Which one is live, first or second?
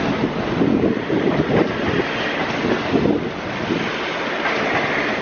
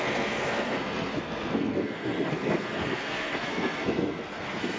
first